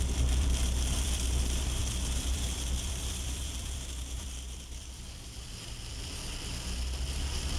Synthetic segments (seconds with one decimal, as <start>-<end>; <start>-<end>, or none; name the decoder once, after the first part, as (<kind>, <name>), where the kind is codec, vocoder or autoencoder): 0.0-6.2 (vocoder, BigVGAN v2)